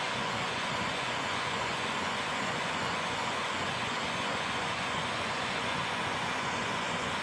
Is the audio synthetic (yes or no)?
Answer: yes